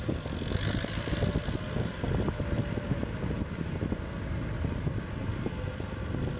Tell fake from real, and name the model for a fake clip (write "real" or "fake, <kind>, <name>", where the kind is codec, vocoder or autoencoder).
real